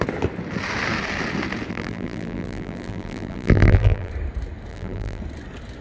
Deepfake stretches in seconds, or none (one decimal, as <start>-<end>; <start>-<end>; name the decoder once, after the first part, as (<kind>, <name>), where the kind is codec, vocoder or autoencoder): 1.7-4.1 (vocoder, BigVGAN v2); 4.7-5.2